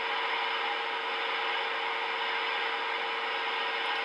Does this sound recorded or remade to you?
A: recorded